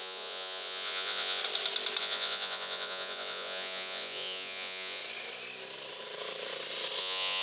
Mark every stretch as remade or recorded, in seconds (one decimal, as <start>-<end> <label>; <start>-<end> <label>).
0.0-1.4 remade; 1.4-2.0 recorded; 2.0-5.0 remade; 5.0-7.0 recorded; 7.0-7.4 remade